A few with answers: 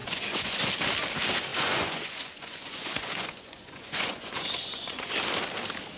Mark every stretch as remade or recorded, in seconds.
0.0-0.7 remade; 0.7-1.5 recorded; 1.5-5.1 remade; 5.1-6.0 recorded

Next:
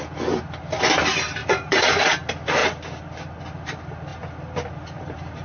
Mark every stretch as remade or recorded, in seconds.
0.0-1.4 recorded; 1.4-2.1 remade; 2.1-5.4 recorded